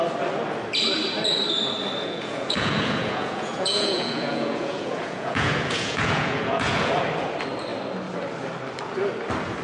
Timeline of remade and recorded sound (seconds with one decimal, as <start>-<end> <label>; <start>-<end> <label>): 0.0-2.0 recorded; 2.0-7.0 remade; 7.0-9.6 recorded